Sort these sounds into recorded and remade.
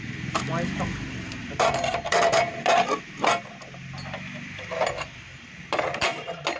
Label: recorded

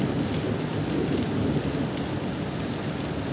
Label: recorded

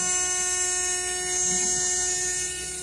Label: recorded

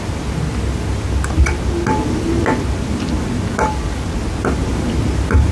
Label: recorded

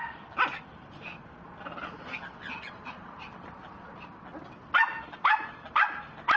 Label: recorded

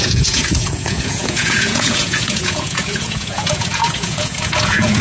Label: remade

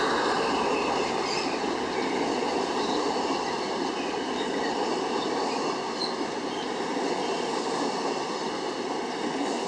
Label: recorded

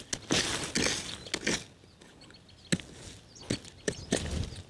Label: recorded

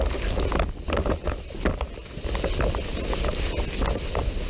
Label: recorded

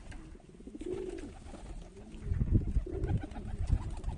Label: recorded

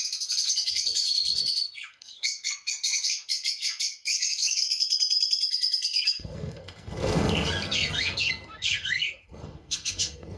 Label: remade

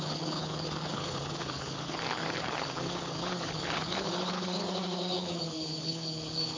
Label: remade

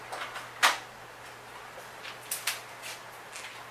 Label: recorded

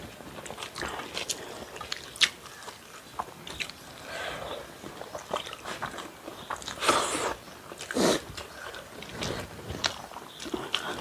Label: recorded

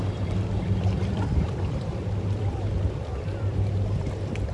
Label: remade